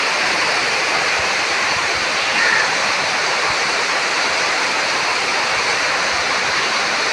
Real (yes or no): no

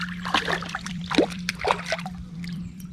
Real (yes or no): no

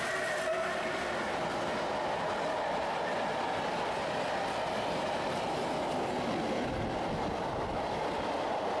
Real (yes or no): yes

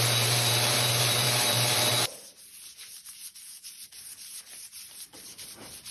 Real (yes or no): no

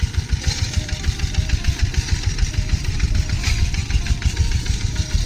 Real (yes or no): no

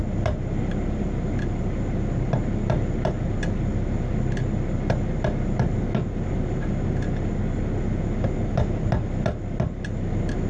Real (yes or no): yes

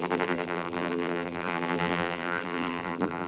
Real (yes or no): no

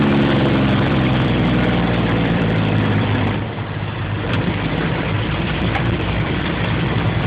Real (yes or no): no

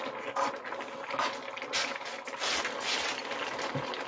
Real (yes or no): yes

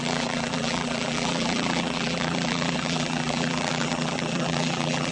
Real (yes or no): no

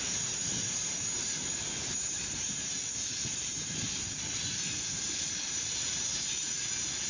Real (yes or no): no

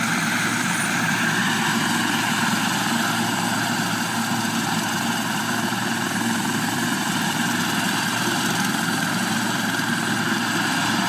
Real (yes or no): no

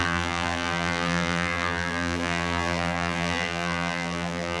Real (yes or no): no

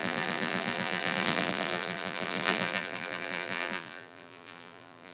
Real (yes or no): no